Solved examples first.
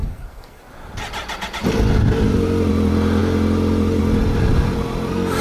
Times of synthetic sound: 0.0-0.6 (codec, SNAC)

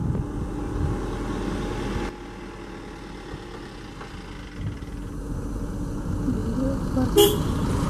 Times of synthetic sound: none

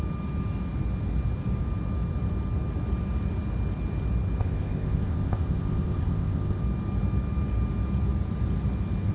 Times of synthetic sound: 4.4-6.6 (codec, ZipCodec)

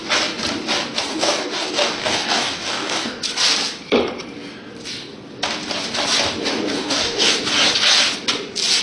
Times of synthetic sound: 1.1-3.2 (codec, DAC); 6.5-7.3

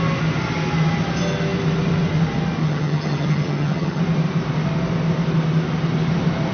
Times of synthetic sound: 2.6-4.0 (vocoder, HiFi-GAN)